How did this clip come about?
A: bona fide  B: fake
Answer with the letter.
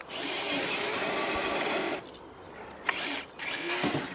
A